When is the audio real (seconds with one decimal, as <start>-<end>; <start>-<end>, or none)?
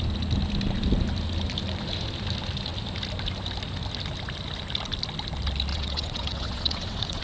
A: 0.0-5.7